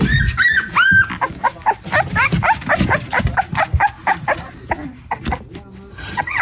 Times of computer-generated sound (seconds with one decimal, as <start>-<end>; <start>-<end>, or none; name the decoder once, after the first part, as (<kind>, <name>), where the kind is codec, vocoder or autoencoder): 5.9-6.4 (vocoder, HiFi-GAN)